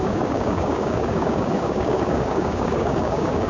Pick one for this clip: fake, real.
fake